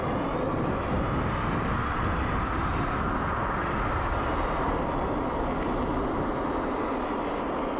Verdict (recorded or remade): recorded